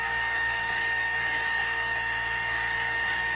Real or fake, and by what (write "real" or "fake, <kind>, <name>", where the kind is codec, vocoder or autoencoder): fake, codec, DAC